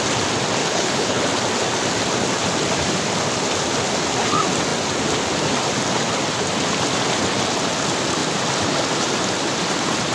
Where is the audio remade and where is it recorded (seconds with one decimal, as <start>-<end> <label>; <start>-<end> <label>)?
0.0-0.6 recorded; 0.6-1.2 remade; 1.2-10.1 recorded